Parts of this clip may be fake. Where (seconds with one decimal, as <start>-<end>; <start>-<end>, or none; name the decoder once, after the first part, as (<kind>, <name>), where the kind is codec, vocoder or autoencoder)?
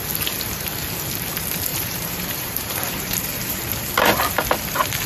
1.7-4.2 (vocoder, BigVGAN v2)